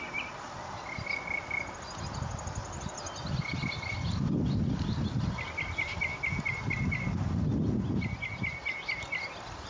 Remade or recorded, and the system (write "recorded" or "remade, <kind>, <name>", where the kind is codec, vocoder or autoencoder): recorded